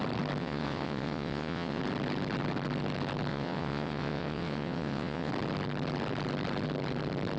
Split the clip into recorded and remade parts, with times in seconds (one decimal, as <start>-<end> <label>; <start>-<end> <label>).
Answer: 0.0-0.4 recorded; 0.4-1.8 remade; 1.8-3.3 recorded; 3.3-5.3 remade; 5.3-7.4 recorded